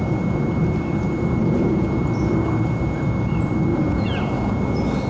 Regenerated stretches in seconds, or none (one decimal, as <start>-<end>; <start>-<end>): 1.4-2.0; 3.7-4.6

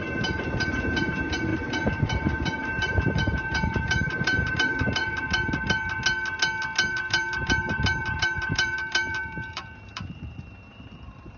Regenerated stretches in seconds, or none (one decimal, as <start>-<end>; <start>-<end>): 0.0-5.0; 6.9-11.4

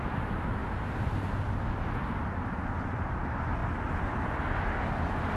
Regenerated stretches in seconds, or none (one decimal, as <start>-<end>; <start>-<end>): none

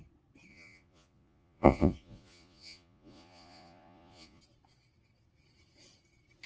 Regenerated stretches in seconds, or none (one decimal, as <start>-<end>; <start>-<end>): 0.5-4.4

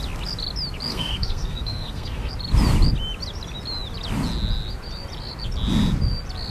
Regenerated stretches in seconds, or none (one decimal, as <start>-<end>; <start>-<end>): 0.9-2.3